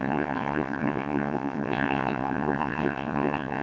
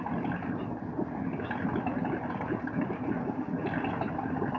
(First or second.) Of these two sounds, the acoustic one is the second